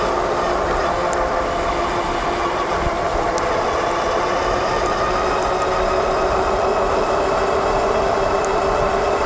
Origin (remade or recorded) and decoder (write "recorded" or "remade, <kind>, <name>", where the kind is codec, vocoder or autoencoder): recorded